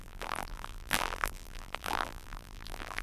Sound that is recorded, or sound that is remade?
remade